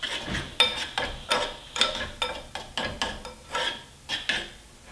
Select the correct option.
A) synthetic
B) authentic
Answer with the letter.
B